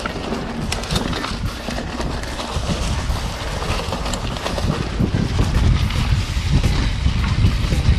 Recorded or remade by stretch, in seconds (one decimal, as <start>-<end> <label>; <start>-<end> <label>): 0.0-8.0 recorded

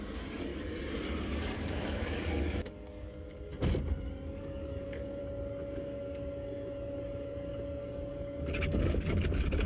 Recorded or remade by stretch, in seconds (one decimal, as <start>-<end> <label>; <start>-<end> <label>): 0.0-0.5 remade; 0.5-1.2 recorded; 1.2-3.5 remade; 3.5-4.4 recorded; 4.4-5.2 remade; 5.2-5.8 recorded; 5.8-9.7 remade

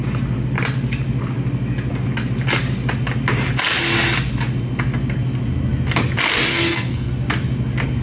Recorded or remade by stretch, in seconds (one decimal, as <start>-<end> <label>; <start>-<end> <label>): 0.0-6.5 recorded; 6.5-7.1 remade; 7.1-8.0 recorded

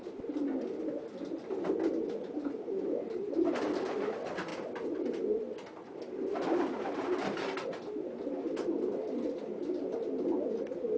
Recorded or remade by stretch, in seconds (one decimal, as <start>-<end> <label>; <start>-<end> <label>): 0.0-11.0 recorded

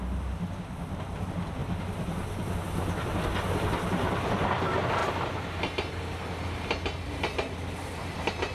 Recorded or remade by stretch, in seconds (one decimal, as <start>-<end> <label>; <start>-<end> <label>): 0.0-8.5 recorded

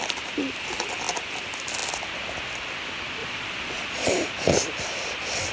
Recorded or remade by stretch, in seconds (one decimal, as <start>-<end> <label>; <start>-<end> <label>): 0.0-3.2 recorded; 3.2-4.1 remade; 4.1-5.5 recorded